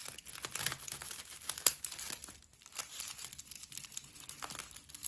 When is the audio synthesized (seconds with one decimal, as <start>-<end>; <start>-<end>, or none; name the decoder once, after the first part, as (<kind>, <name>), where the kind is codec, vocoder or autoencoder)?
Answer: none